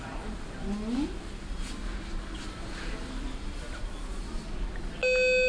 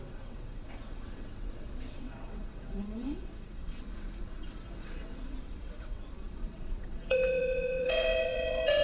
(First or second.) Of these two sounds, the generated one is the second